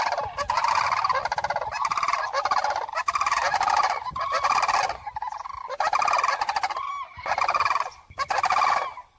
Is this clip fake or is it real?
real